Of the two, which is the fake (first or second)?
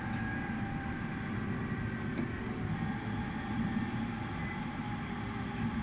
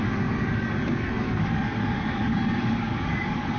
second